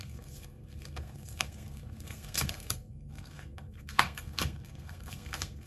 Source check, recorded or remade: remade